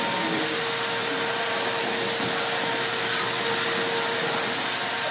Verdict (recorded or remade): recorded